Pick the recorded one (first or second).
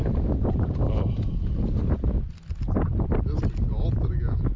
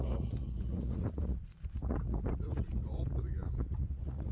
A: first